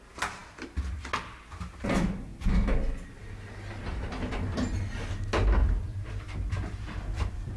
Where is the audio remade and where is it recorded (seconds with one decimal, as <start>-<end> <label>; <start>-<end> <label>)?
0.0-5.6 recorded; 5.6-7.6 remade